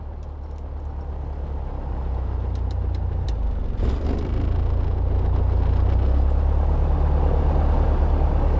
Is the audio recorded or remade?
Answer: recorded